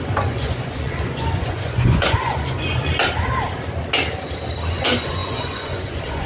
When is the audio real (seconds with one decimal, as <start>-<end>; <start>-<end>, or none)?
2.9-4.7